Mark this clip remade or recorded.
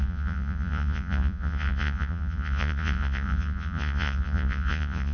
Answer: remade